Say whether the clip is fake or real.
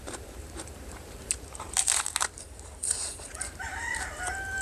fake